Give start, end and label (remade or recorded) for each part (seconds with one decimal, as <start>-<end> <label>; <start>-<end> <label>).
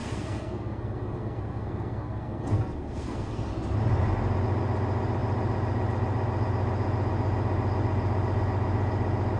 0.0-3.5 remade; 3.5-9.4 recorded